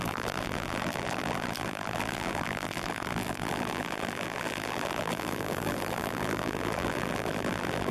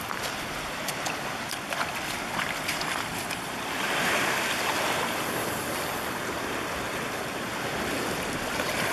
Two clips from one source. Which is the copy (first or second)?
first